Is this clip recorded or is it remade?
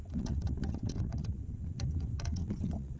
remade